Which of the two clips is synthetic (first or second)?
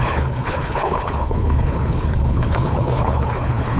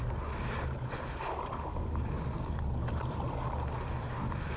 first